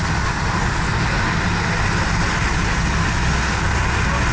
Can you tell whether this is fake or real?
real